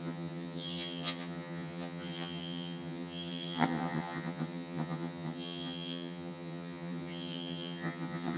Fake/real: fake